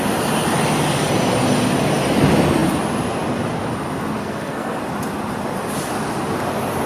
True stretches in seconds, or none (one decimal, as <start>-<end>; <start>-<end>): 0.0-4.2; 4.8-6.9